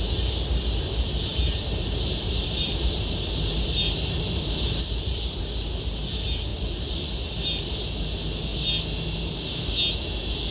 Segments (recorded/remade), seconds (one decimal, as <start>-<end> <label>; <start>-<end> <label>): 0.0-1.3 recorded; 1.3-5.4 remade; 5.4-6.5 recorded; 6.5-7.2 remade; 7.2-10.5 recorded